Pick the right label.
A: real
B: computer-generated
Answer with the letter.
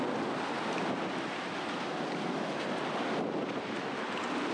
A